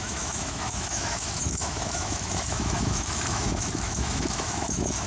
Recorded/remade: remade